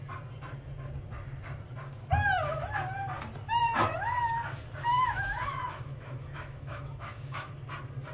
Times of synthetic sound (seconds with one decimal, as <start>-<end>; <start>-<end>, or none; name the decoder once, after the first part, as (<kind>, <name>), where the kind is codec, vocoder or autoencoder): 4.9-7.5 (autoencoder, DAC-VAE)